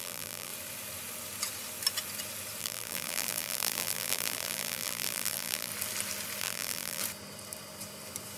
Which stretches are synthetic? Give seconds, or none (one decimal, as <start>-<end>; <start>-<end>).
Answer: 0.0-0.5; 2.6-5.7; 6.4-7.0